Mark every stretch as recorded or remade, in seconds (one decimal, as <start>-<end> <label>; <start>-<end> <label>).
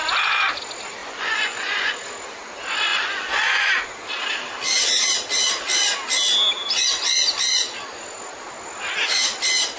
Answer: 0.0-1.0 recorded; 1.0-1.9 remade; 1.9-2.9 recorded; 2.9-3.7 remade; 3.7-9.8 recorded